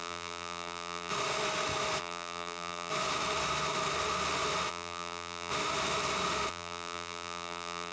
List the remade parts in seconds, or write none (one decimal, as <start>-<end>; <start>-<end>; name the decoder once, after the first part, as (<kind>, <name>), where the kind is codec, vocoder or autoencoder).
0.0-1.1 (vocoder, BigVGAN v2); 2.0-2.9; 4.7-5.5; 6.5-7.9